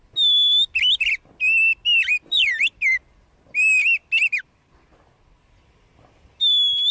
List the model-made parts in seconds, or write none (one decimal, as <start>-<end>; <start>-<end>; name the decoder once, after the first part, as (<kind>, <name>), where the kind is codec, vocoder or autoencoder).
2.1-2.6 (vocoder, BigVGAN v2)